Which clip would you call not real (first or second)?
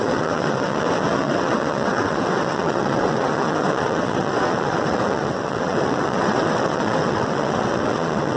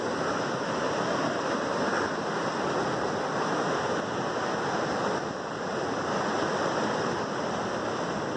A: first